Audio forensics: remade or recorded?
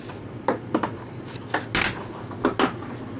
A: recorded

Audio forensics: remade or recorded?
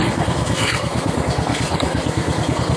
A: remade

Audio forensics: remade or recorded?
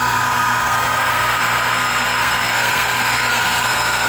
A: remade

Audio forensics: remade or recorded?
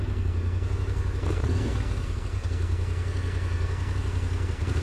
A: remade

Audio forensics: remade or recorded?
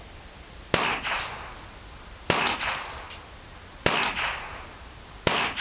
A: recorded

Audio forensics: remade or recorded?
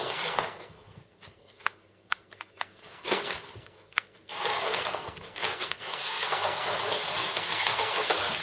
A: remade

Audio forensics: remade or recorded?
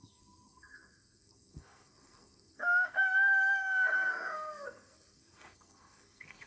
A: remade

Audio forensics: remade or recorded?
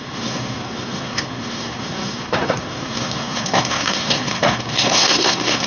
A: remade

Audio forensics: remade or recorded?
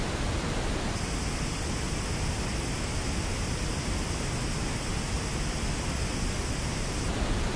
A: recorded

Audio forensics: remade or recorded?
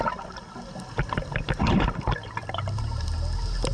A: recorded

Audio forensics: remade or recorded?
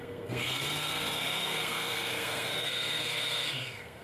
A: remade